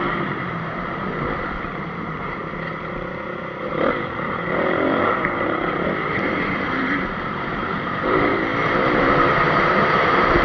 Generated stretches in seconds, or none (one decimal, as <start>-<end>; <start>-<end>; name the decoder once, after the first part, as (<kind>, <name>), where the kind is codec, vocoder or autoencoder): 0.0-2.4 (vocoder, BigVGAN v2); 3.7-8.3; 9.0-10.4

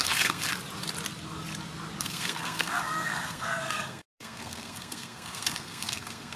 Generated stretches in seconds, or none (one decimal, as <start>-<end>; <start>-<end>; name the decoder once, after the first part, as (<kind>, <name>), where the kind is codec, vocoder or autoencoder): 0.0-0.5 (codec, SNAC); 2.0-6.4

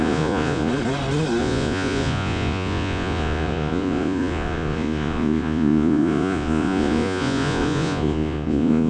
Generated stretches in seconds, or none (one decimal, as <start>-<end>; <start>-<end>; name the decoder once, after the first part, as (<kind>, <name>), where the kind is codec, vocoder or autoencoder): 0.0-0.7 (vocoder, Vocos); 1.4-8.9

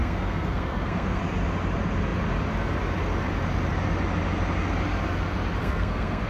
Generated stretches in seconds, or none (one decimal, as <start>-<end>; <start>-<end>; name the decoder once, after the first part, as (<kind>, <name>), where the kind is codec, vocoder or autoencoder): 0.0-1.2 (codec, SNAC); 5.6-6.3

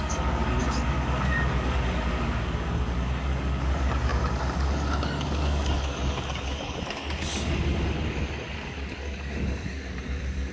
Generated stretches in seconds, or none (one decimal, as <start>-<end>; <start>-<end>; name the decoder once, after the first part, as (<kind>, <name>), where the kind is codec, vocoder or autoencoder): 0.0-10.5 (codec, DAC)

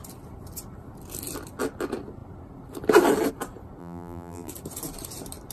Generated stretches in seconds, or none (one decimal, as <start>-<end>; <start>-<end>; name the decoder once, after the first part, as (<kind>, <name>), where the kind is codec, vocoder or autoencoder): 3.8-4.5 (vocoder, BigVGAN v2)

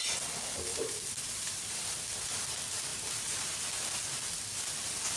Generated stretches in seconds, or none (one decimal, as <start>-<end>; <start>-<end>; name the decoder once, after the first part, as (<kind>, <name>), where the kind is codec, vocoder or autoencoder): 0.7-1.8 (vocoder, BigVGAN v2); 2.9-3.6

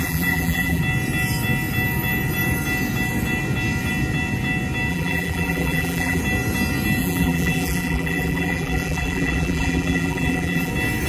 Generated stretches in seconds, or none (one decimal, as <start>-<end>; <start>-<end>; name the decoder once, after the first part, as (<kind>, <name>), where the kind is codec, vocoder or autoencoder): 0.0-0.8 (vocoder, BigVGAN v2); 4.9-6.2; 7.0-10.7